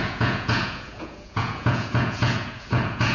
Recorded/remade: remade